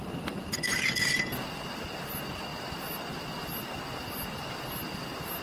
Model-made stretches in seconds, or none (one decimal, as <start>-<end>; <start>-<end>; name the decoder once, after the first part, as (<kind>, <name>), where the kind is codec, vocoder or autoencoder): none